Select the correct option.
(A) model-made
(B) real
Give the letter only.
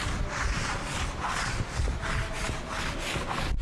B